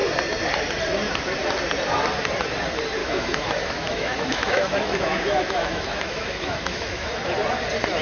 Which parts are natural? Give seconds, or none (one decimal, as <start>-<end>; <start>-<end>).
0.0-3.0; 7.1-8.0